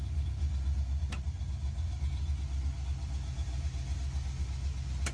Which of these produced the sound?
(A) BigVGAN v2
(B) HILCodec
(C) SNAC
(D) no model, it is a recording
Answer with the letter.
D